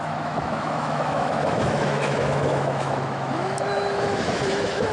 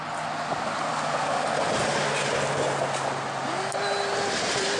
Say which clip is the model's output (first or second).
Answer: first